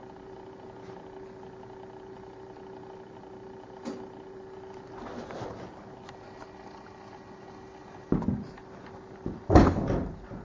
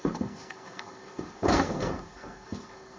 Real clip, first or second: first